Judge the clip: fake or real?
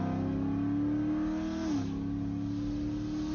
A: real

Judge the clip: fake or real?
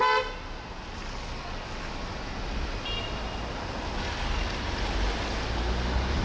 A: real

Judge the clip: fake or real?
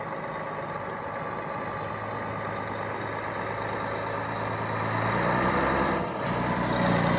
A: real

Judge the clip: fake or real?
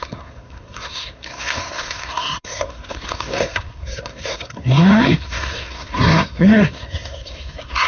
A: fake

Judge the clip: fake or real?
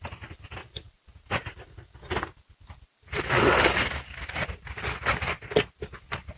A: real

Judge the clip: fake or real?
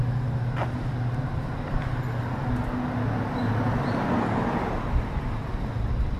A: real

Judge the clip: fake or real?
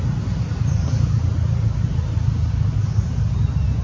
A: real